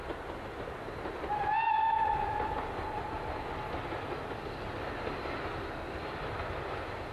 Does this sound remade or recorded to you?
recorded